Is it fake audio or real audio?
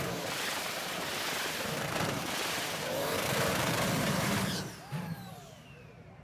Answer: fake